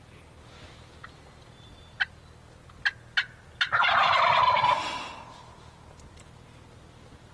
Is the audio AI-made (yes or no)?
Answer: no